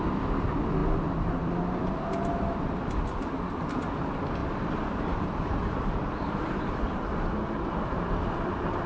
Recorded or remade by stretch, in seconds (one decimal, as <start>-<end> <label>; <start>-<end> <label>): 0.0-0.8 recorded; 0.8-1.6 remade; 1.6-4.4 recorded; 4.4-6.7 remade; 6.7-8.9 recorded